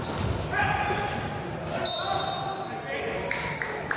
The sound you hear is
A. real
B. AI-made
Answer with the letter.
A